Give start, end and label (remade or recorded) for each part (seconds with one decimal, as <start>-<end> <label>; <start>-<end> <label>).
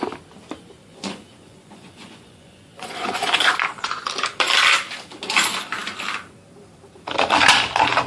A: 0.0-0.8 recorded; 0.8-4.1 remade; 4.1-8.1 recorded